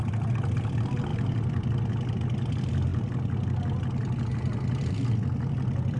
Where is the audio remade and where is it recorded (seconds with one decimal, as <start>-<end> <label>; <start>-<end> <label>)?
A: 0.0-2.9 remade; 2.9-4.3 recorded; 4.3-6.0 remade